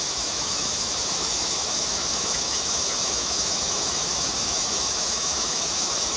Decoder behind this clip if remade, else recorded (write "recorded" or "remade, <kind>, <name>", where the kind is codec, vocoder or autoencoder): remade, autoencoder, DAC-VAE